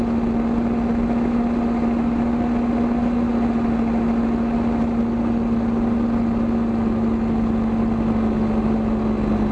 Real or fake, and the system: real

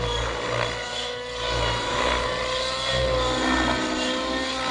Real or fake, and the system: real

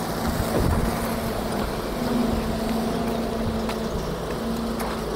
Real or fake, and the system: real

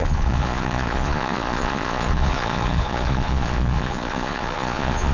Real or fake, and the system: fake, vocoder, Vocos